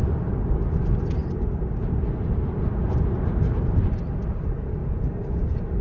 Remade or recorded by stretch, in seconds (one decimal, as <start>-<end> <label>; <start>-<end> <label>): 0.0-4.8 recorded; 4.8-5.8 remade